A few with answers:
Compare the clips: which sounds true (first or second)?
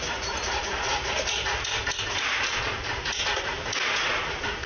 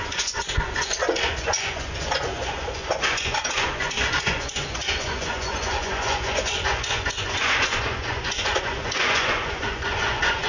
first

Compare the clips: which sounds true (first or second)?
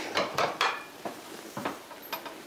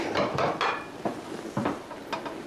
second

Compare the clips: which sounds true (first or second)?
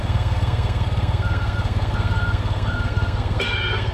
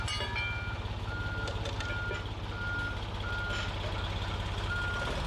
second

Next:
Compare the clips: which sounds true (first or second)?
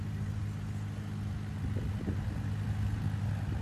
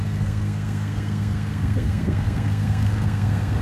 first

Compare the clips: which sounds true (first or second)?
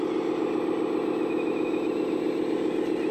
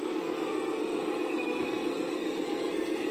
first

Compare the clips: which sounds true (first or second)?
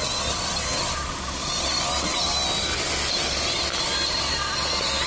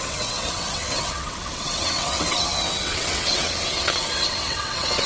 first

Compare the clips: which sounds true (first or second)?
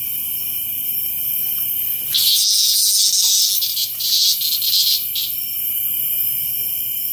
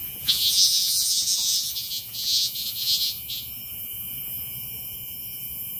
first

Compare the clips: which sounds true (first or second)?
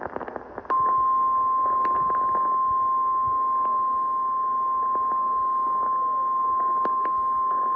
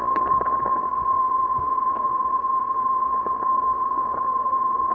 first